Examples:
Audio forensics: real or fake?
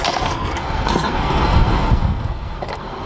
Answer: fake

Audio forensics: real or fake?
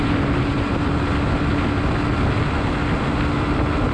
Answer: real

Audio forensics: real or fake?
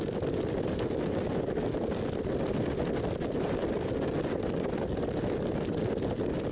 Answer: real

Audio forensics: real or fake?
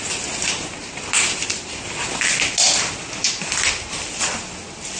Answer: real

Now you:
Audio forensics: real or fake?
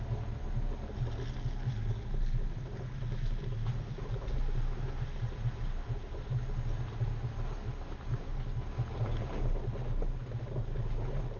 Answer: real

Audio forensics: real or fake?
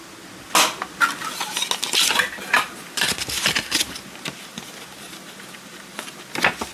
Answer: real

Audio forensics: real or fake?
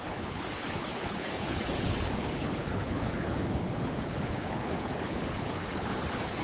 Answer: fake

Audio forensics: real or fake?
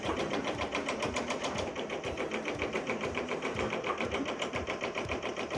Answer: fake